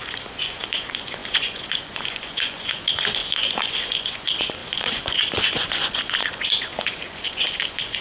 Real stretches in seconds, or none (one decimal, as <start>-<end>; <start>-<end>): none